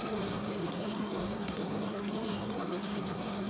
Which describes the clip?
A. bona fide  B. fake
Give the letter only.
B